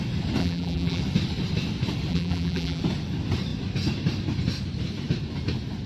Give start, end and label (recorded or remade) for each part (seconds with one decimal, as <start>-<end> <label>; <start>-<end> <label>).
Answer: 0.0-0.4 recorded; 0.4-1.0 remade; 1.0-2.1 recorded; 2.1-2.8 remade; 2.8-5.9 recorded